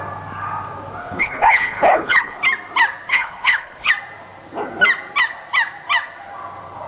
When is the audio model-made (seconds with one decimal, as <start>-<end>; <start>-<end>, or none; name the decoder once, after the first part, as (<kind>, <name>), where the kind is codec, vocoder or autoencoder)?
1.0-2.4 (codec, HILCodec); 3.1-3.9